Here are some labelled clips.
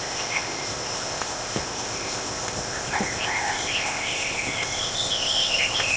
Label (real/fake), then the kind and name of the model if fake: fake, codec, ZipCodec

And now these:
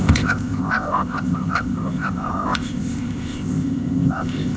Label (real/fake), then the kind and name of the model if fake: fake, codec, ZipCodec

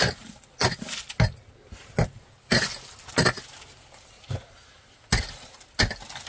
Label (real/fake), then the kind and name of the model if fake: real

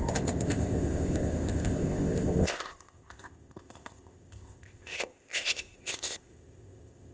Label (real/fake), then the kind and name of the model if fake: fake, codec, ZipCodec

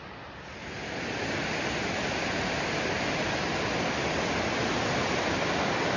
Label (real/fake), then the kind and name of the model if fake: real